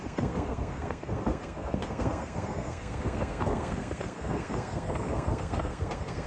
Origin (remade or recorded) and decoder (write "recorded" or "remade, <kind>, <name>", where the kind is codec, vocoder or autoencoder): remade, codec, SNAC